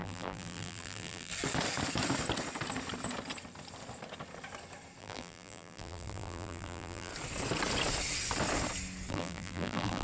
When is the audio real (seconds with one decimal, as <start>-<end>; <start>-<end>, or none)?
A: 1.3-5.0; 7.1-9.1